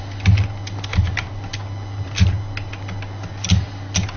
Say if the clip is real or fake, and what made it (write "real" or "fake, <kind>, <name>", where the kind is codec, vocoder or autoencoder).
real